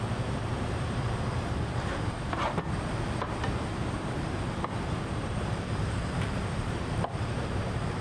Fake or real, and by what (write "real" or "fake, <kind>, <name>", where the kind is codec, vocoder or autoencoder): fake, vocoder, BigVGAN v2